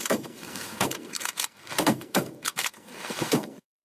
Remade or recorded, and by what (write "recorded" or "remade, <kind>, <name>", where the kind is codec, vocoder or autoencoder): remade, codec, SNAC